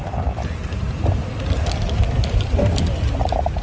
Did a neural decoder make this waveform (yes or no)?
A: no